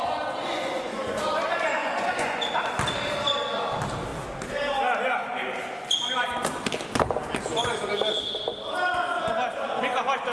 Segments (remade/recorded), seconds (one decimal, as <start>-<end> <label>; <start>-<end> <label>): 0.0-0.4 recorded; 0.4-1.2 remade; 1.2-1.8 recorded; 1.8-2.4 remade; 2.4-10.3 recorded